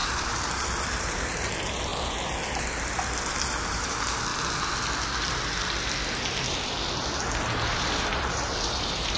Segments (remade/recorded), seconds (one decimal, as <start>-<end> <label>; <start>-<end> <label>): 0.0-1.9 remade; 1.9-2.6 recorded; 2.6-4.3 remade; 4.3-7.7 recorded; 7.7-9.2 remade